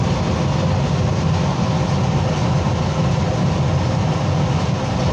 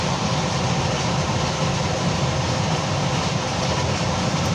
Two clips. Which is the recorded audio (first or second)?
first